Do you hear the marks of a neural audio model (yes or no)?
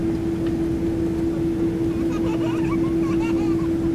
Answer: no